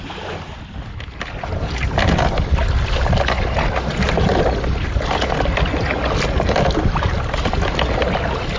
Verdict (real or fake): real